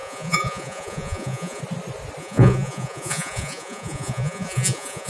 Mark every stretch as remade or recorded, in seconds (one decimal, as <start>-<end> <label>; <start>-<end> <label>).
0.0-1.6 remade; 1.6-2.2 recorded; 2.2-5.1 remade